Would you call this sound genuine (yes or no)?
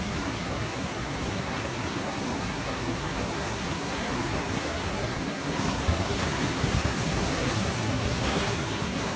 no